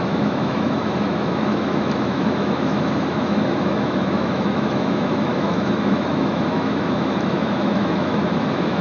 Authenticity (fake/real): fake